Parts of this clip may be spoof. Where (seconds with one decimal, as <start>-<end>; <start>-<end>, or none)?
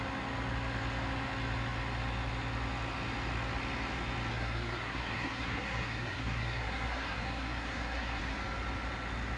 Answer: 4.3-8.2